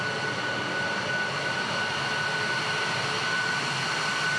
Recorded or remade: recorded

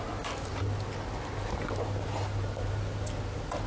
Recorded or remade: recorded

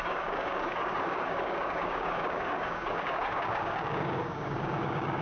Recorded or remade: remade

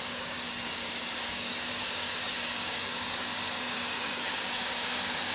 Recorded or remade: remade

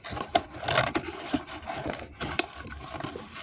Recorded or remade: recorded